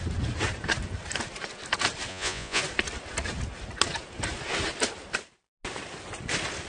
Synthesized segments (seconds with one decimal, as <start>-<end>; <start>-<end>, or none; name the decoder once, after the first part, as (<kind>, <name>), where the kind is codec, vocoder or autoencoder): 2.1-2.6 (vocoder, Vocos)